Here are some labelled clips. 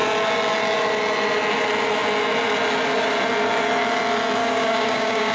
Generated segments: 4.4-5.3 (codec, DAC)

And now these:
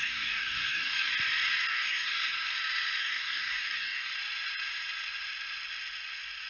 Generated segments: 0.0-1.1 (codec, DAC); 1.7-2.3; 3.0-4.1

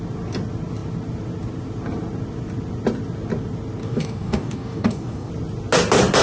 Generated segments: 3.8-5.3 (codec, DAC)